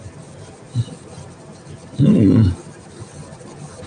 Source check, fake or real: real